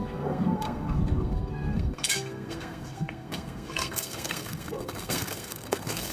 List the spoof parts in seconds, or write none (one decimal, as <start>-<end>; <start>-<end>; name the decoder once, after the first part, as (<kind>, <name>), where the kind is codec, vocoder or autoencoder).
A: 0.0-6.1 (codec, SNAC)